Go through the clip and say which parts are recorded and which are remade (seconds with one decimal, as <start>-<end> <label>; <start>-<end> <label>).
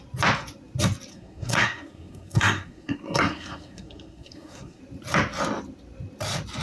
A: 0.0-1.1 recorded; 1.1-4.8 remade; 4.8-6.6 recorded